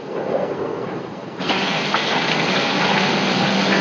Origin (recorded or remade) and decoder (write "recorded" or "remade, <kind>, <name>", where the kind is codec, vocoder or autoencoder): remade, codec, SNAC